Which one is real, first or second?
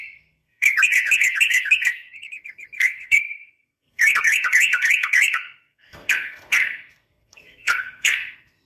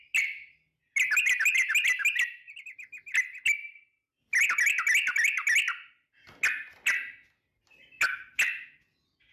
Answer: second